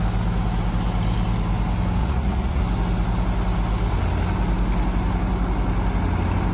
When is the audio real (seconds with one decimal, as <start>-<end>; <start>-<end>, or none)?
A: 0.0-2.0; 2.6-6.5